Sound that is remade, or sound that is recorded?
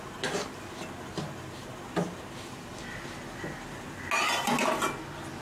recorded